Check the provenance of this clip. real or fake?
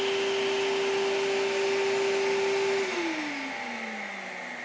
real